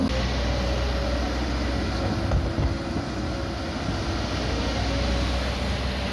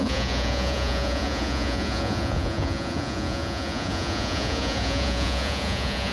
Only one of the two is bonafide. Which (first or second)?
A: first